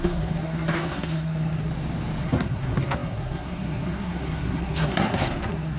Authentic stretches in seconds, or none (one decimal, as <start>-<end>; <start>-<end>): 1.7-2.2